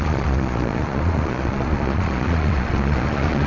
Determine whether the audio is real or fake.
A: fake